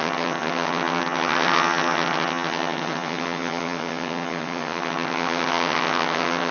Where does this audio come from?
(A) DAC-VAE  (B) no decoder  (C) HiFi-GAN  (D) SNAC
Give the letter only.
C